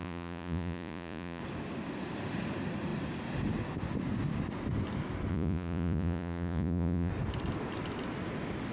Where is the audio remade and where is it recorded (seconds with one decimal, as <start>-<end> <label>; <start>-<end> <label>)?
0.0-1.4 remade; 1.4-5.3 recorded; 5.3-7.1 remade; 7.1-8.7 recorded